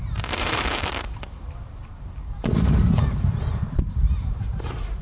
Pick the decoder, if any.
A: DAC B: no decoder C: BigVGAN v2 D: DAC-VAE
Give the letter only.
C